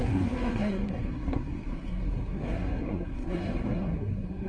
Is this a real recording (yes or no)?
no